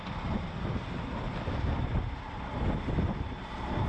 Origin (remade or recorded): recorded